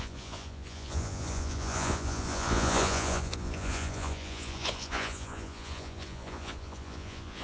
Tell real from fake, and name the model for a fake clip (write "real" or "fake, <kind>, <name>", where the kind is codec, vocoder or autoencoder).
fake, vocoder, Vocos